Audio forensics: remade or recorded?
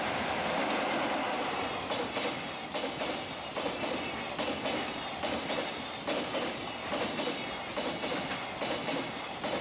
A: recorded